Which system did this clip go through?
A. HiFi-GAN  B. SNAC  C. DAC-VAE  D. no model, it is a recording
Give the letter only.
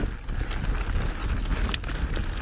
D